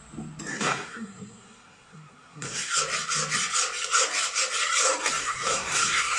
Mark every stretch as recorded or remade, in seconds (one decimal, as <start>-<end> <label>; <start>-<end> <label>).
0.0-0.5 recorded; 0.5-2.8 remade; 2.8-5.2 recorded; 5.2-6.2 remade